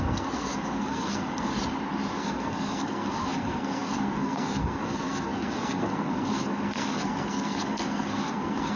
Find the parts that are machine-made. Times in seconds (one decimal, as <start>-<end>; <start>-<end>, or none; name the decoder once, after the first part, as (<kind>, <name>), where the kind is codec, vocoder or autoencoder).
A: 0.0-1.5 (codec, SNAC); 2.1-8.8